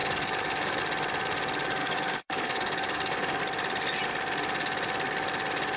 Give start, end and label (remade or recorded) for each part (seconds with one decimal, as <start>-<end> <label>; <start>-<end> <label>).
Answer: 0.0-0.8 remade; 0.8-1.8 recorded; 1.8-3.4 remade; 3.4-5.8 recorded